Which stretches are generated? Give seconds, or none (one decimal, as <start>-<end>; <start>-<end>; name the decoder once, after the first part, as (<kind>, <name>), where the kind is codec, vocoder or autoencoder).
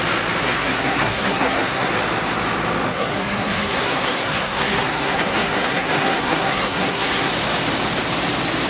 0.4-1.9 (codec, SNAC); 2.9-7.3